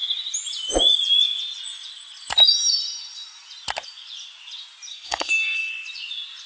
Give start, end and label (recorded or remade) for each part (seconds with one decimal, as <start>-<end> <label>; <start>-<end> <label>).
0.0-4.9 recorded; 4.9-5.7 remade; 5.7-6.5 recorded